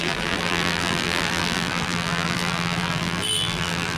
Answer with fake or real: fake